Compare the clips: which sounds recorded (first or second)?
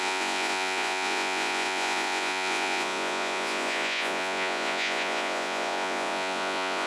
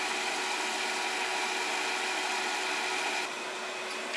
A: second